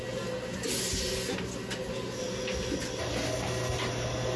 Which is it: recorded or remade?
recorded